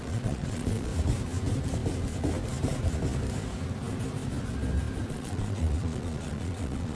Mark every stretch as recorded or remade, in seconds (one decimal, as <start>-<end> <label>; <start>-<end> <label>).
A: 0.0-0.9 remade; 0.9-5.1 recorded; 5.1-7.0 remade